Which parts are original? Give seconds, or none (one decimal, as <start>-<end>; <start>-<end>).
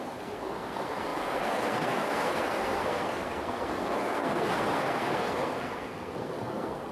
none